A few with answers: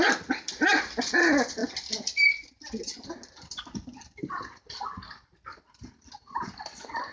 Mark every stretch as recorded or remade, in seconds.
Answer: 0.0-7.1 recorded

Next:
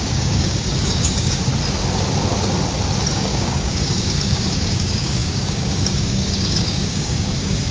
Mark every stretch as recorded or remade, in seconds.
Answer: 0.0-1.5 remade; 1.5-3.1 recorded; 3.1-7.7 remade

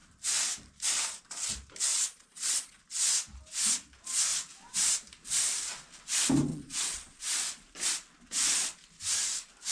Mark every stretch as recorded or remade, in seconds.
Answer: 0.0-1.9 recorded; 1.9-2.8 remade; 2.8-6.5 recorded; 6.5-7.2 remade; 7.2-9.7 recorded